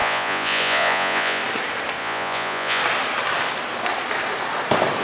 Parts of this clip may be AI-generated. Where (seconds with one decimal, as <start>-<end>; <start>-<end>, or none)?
0.0-1.4; 2.0-2.8